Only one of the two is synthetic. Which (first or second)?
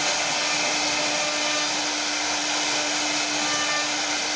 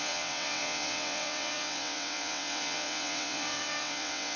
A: second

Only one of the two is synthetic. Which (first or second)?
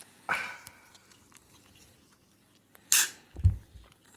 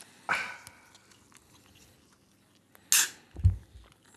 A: first